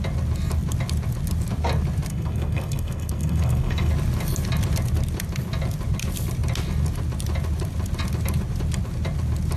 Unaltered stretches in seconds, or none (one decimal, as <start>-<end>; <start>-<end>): 0.0-2.1; 3.9-9.6